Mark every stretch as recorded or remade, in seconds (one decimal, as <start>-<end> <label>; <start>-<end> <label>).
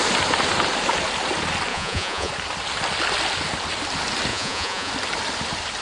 0.0-1.7 recorded; 1.7-2.3 remade; 2.3-4.3 recorded; 4.3-4.9 remade; 4.9-5.8 recorded